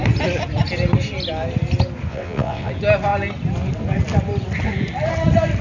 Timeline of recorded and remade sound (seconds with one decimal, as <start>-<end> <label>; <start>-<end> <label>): 0.0-2.1 recorded; 2.1-2.7 remade; 2.7-5.6 recorded